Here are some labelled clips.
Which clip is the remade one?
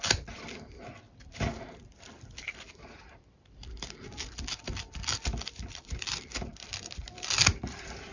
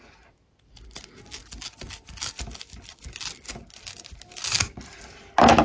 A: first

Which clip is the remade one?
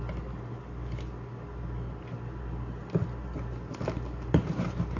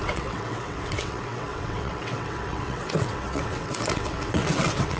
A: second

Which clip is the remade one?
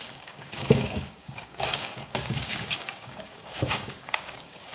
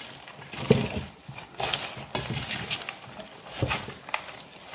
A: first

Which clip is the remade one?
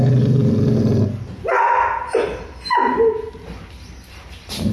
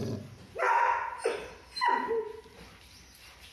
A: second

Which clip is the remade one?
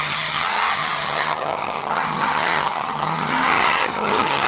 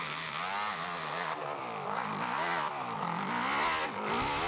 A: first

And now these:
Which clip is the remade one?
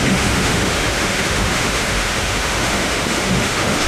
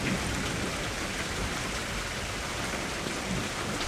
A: first